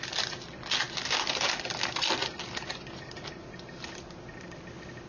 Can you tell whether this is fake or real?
real